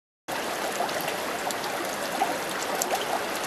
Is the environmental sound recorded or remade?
recorded